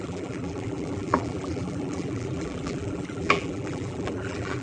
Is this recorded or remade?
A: remade